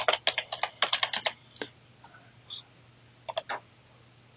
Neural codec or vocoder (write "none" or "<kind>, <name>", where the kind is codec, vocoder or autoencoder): none